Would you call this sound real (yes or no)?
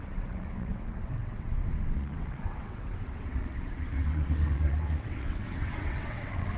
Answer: no